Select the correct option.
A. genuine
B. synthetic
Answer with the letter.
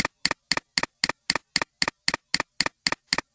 A